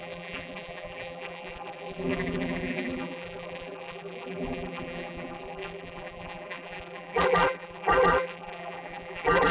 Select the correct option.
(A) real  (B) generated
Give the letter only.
B